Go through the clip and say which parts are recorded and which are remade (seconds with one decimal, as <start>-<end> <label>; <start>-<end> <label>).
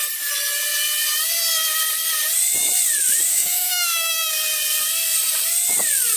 0.0-3.3 recorded; 3.3-4.3 remade; 4.3-6.2 recorded